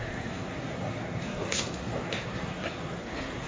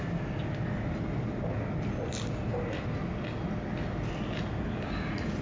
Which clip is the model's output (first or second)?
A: first